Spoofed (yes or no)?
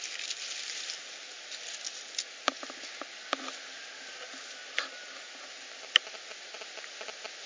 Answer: no